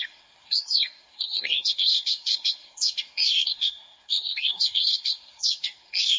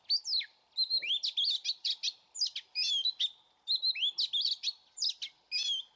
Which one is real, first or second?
second